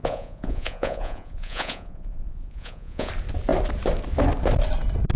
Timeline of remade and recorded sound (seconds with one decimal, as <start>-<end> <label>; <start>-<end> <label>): 0.0-3.1 remade; 3.1-5.2 recorded